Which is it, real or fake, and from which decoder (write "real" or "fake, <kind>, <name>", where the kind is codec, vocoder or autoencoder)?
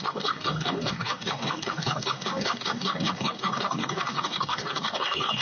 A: fake, codec, DAC